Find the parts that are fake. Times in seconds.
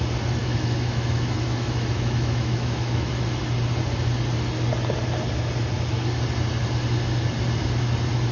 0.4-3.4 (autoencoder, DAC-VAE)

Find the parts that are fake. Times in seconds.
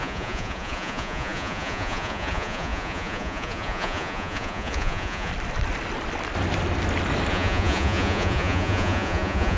0.0-5.3 (vocoder, Vocos); 7.3-9.6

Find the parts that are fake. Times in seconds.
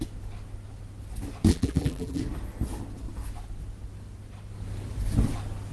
1.5-2.2 (vocoder, BigVGAN v2)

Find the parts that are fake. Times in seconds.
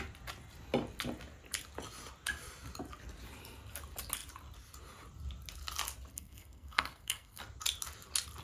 6.1-7.4 (codec, SNAC)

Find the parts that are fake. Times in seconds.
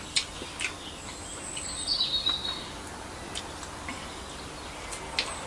none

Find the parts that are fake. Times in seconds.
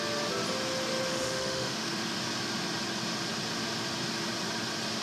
1.1-2.1 (autoencoder, DAC-VAE)